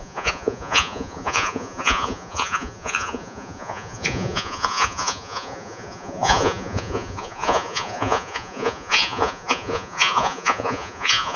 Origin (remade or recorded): remade